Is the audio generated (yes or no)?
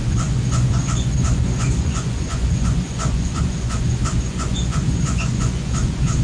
yes